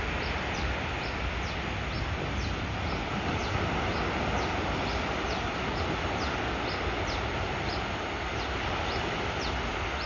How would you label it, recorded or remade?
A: recorded